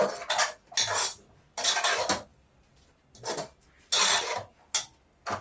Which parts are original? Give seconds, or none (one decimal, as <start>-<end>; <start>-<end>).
0.0-5.4